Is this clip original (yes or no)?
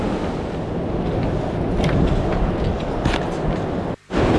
yes